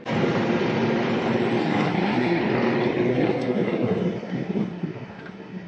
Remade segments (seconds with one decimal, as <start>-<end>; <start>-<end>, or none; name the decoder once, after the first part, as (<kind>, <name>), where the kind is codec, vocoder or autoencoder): 1.6-2.4 (codec, SNAC); 3.1-5.7